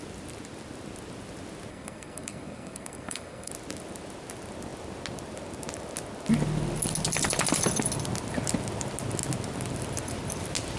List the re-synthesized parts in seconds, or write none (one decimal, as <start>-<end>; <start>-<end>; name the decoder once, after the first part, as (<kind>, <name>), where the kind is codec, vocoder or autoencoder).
1.7-3.5 (codec, SNAC)